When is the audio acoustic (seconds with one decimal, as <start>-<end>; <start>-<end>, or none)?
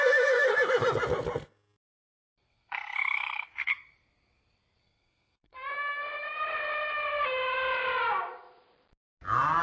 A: 0.5-2.5; 3.7-4.8; 5.7-9.6